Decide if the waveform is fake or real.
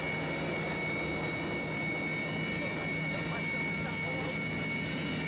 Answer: real